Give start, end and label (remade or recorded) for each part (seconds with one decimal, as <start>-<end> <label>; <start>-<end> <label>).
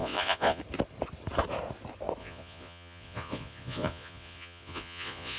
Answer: 0.0-0.6 remade; 0.6-2.2 recorded; 2.2-5.4 remade